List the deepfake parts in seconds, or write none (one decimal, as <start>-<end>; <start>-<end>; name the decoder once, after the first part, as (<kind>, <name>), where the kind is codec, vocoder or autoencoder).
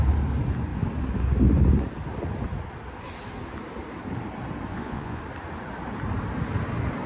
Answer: 4.7-5.2 (vocoder, Vocos)